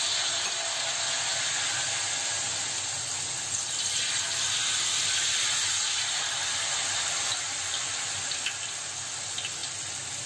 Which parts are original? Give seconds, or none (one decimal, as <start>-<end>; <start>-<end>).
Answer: 0.0-10.3

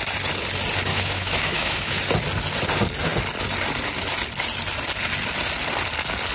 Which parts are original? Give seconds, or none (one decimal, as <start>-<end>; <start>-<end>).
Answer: 0.0-0.9; 2.0-6.3